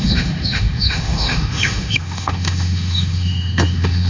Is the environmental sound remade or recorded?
remade